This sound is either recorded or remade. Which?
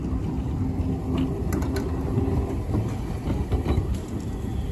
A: recorded